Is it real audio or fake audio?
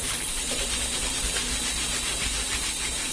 real